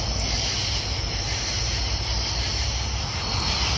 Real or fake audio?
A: real